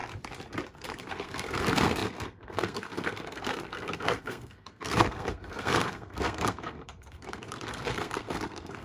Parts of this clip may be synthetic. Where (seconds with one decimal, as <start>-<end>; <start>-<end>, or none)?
0.7-8.8